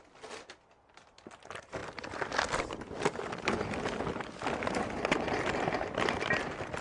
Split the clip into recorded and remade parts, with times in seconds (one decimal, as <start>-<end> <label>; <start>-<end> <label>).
0.0-6.8 recorded